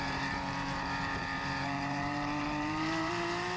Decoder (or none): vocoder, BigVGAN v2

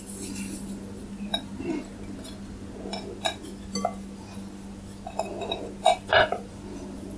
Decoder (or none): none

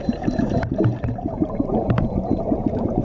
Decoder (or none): vocoder, BigVGAN v2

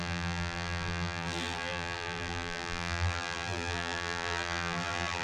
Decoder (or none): vocoder, BigVGAN v2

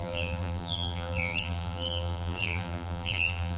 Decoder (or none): vocoder, BigVGAN v2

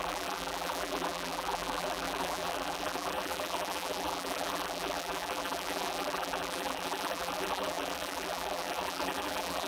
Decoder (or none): vocoder, BigVGAN v2